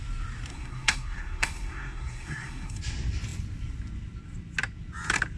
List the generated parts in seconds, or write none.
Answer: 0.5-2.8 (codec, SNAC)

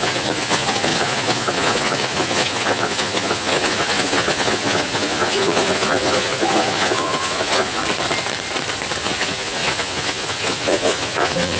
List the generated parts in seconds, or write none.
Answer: 0.0-7.8 (vocoder, Vocos); 9.0-11.6